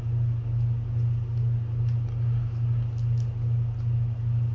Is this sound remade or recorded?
recorded